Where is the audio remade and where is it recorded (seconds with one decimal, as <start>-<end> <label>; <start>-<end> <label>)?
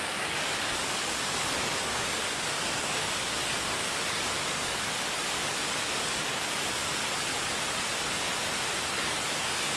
0.0-7.3 remade; 7.3-8.8 recorded; 8.8-9.8 remade